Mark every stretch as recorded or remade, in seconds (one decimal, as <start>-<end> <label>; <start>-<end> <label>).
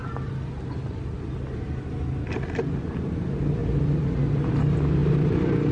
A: 0.0-2.3 remade; 2.3-3.6 recorded; 3.6-4.5 remade; 4.5-5.0 recorded; 5.0-5.7 remade